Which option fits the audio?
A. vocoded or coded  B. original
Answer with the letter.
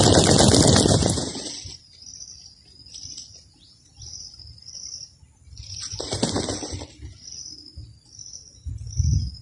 B